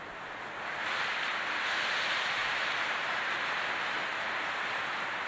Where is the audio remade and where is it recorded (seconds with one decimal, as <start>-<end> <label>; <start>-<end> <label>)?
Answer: 0.0-5.3 recorded